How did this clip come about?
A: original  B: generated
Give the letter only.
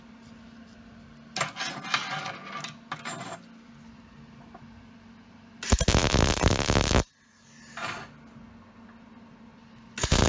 A